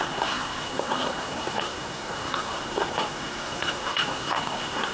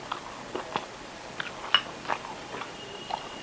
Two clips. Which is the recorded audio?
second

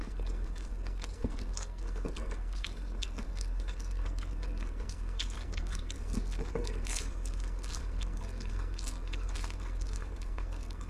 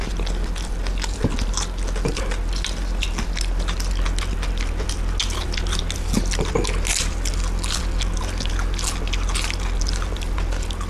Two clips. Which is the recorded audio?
second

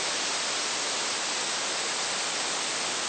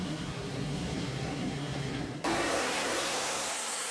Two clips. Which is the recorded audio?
first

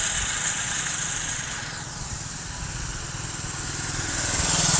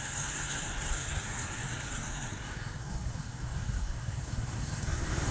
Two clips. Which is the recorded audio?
first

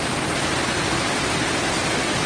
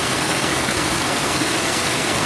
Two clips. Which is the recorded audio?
first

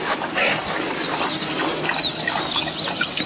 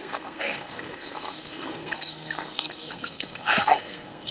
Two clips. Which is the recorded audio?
first